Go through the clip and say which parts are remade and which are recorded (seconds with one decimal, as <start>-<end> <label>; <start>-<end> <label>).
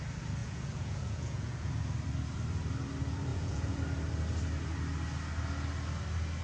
0.0-0.4 recorded; 0.4-1.7 remade; 1.7-3.3 recorded; 3.3-3.8 remade; 3.8-6.4 recorded